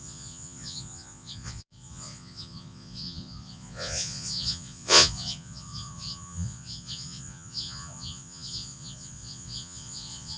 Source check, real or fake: fake